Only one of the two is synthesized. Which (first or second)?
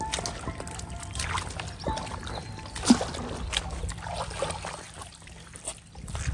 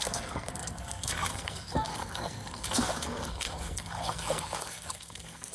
second